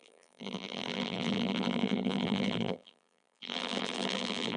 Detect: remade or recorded remade